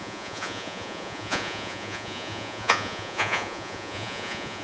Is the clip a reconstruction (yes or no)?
yes